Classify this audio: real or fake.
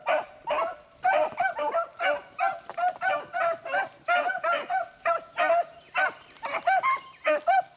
real